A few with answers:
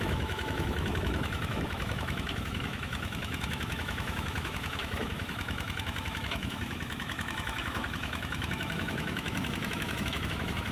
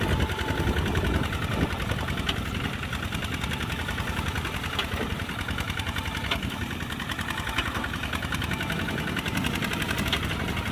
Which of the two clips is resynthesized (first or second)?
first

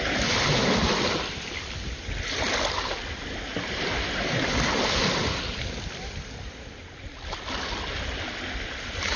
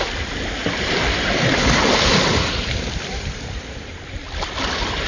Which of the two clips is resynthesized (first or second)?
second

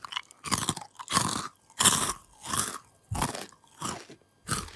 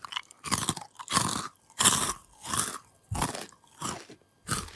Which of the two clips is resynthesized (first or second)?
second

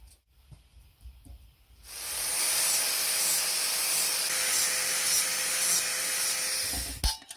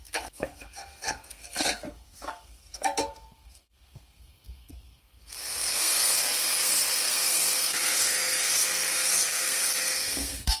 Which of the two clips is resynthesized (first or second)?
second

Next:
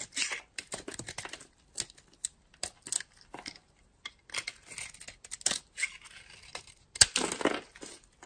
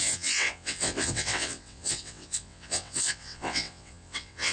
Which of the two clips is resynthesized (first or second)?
second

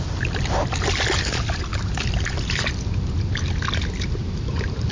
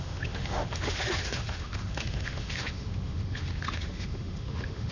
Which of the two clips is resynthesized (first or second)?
second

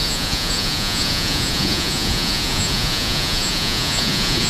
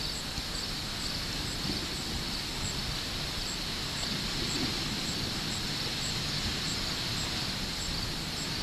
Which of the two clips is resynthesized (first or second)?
first